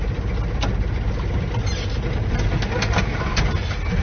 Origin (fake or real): real